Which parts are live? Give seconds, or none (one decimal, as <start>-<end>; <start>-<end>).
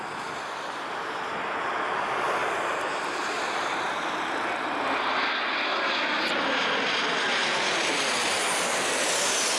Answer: 0.0-2.4; 4.5-7.4; 7.9-8.4; 9.1-9.6